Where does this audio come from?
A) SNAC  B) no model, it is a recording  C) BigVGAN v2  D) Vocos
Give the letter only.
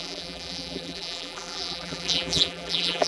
C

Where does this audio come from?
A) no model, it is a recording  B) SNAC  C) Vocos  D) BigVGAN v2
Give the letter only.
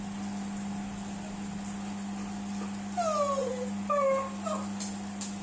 A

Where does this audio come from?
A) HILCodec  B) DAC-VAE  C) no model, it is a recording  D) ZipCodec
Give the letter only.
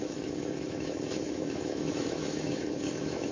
B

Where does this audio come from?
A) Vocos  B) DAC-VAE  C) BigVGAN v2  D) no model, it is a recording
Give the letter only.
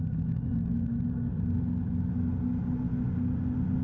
D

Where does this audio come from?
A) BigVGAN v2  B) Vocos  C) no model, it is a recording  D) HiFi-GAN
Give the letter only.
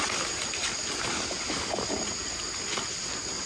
C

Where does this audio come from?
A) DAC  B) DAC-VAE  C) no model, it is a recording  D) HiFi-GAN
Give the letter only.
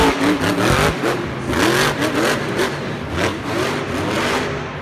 C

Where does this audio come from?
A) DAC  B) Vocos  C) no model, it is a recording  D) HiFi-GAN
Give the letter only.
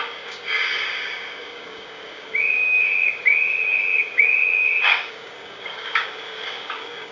A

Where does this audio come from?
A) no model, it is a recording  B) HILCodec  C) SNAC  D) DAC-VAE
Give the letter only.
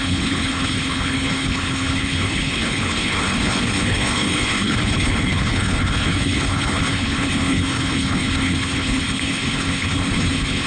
B